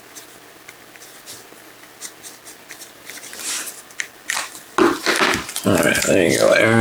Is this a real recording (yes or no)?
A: yes